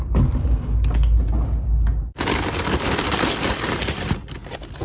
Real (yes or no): yes